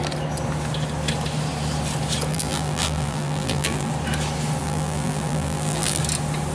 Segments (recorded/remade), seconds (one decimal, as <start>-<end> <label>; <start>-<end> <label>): 0.0-2.3 recorded; 2.3-3.9 remade; 3.9-4.6 recorded; 4.6-6.0 remade; 6.0-6.5 recorded